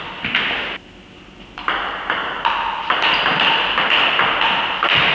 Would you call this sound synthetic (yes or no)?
no